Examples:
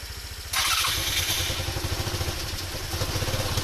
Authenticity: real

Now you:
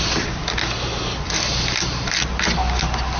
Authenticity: real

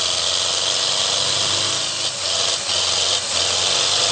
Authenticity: real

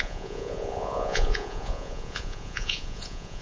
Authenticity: fake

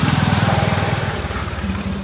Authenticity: fake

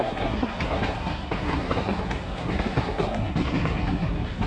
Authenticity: fake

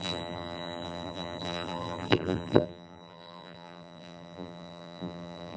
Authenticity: fake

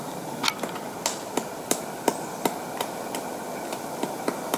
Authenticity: real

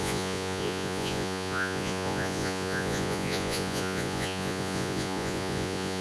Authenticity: fake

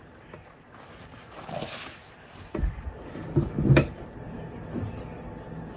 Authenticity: real